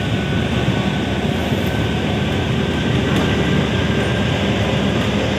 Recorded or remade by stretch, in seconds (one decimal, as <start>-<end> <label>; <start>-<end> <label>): 0.0-1.4 recorded; 1.4-2.8 remade; 2.8-5.4 recorded